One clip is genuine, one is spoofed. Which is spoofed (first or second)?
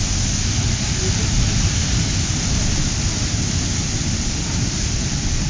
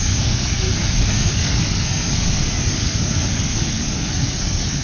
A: second